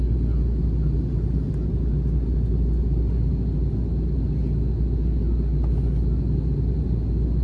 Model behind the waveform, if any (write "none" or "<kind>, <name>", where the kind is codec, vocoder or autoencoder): none